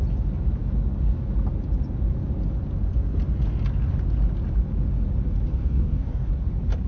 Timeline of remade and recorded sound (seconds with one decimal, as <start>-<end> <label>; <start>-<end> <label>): 0.0-5.6 recorded; 5.6-6.3 remade; 6.3-6.9 recorded